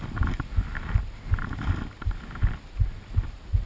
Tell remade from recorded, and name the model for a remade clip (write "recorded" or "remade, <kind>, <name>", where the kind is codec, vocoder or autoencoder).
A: recorded